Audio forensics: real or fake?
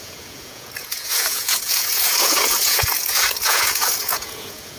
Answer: fake